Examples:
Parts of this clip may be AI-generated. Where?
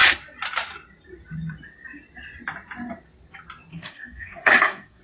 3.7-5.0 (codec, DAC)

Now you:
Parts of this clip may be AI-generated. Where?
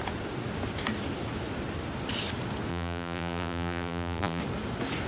2.7-4.4 (vocoder, BigVGAN v2)